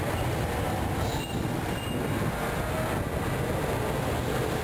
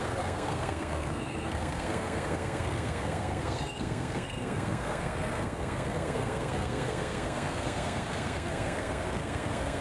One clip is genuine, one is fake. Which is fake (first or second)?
second